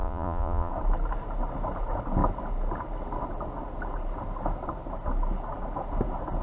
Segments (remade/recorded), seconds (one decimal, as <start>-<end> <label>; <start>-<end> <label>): 0.0-0.7 remade; 0.7-6.4 recorded